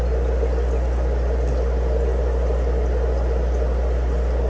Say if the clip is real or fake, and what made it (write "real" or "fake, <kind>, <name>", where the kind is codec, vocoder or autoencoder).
real